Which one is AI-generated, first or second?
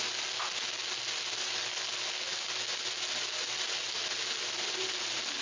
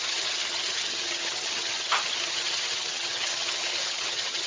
second